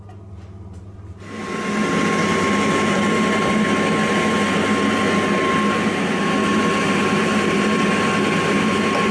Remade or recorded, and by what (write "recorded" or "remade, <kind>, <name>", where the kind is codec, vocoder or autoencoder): recorded